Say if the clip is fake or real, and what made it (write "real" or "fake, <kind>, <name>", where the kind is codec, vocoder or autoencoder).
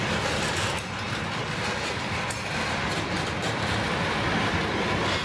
real